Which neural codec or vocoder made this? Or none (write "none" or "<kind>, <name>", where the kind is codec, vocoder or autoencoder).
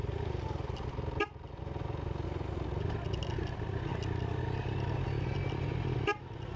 none